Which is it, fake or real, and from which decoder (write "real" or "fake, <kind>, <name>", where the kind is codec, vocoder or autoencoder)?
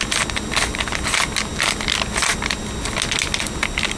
real